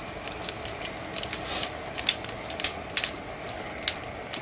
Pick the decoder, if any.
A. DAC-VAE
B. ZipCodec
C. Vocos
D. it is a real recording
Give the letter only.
D